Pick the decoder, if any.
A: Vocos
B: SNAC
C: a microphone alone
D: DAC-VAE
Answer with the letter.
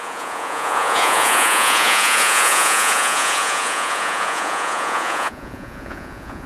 A